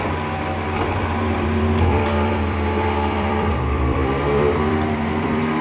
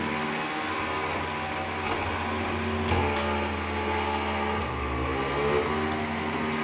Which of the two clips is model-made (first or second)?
first